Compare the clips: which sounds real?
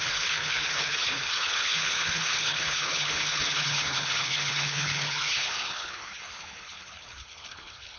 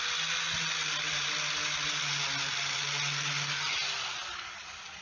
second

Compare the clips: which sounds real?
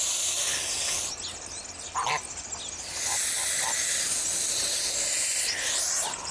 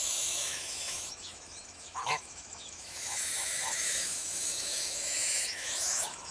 first